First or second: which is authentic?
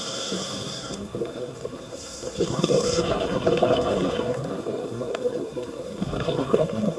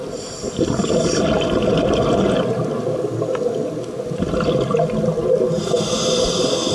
second